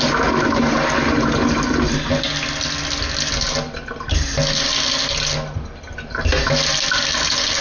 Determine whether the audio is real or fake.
real